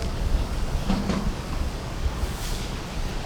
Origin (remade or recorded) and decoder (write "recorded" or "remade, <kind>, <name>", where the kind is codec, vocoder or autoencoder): remade, codec, DAC